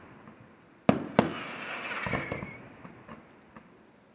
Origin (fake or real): real